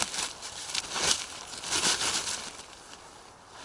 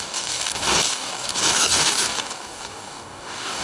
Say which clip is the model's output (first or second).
second